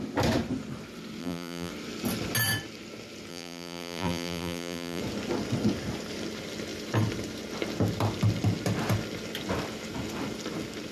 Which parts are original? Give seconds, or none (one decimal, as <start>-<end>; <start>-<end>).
0.0-1.2; 1.7-3.3; 5.0-10.9